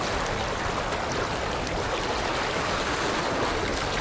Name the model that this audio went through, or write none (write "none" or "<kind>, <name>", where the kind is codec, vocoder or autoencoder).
none